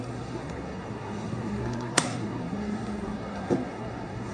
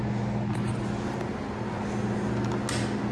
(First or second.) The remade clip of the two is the first